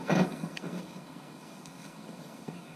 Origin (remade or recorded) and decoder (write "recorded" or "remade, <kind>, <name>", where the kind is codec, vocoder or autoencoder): remade, codec, SNAC